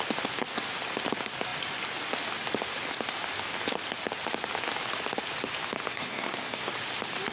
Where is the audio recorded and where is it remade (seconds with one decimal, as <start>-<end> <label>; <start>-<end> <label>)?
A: 0.0-5.9 recorded; 5.9-6.7 remade; 6.7-7.3 recorded